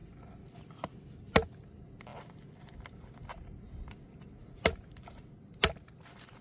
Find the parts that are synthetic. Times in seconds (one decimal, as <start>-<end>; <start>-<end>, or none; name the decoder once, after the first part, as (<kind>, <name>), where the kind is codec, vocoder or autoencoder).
none